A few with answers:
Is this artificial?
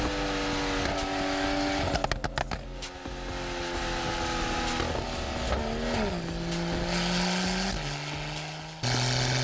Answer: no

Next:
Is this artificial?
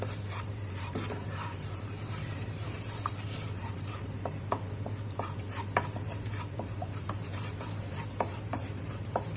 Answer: yes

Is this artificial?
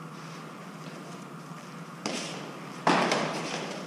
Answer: no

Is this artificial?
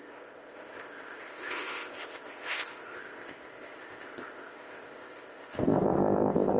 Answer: yes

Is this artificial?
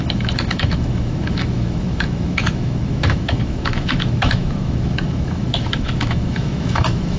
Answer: yes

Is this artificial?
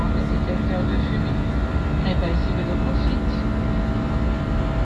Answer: no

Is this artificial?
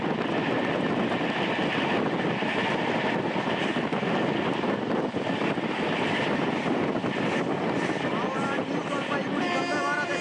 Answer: no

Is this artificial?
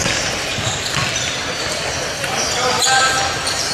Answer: no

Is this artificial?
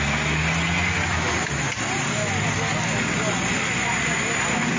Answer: no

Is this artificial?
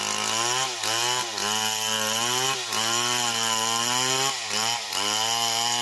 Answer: no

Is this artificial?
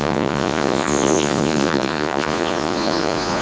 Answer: yes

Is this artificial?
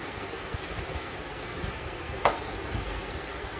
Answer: yes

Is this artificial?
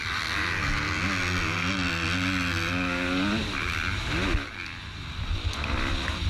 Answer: no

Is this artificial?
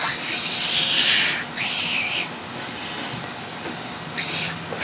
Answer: no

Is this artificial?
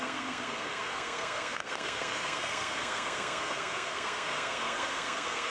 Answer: yes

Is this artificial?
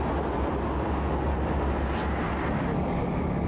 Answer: no